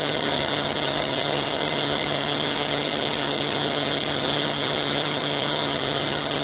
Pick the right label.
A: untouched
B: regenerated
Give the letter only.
B